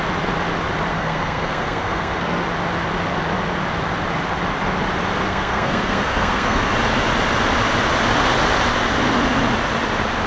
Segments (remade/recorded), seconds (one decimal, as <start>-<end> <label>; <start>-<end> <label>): 0.0-0.9 recorded; 0.9-2.4 remade; 2.4-5.3 recorded; 5.3-6.7 remade; 6.7-10.3 recorded